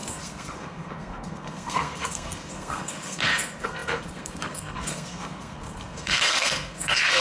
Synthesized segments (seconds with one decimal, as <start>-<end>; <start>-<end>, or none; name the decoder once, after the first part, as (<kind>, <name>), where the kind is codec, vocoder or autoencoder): 0.0-7.2 (codec, SNAC)